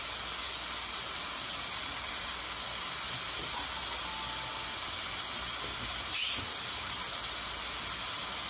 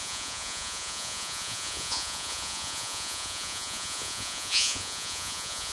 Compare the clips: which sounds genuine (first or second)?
first